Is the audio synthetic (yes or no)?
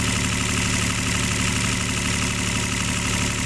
no